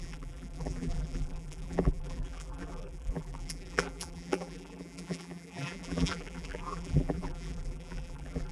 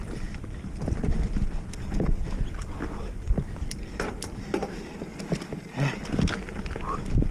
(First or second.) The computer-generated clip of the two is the first